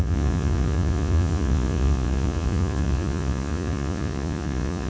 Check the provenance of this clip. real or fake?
fake